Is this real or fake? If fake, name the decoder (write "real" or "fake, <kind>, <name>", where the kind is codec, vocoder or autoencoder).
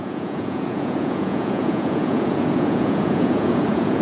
fake, vocoder, Vocos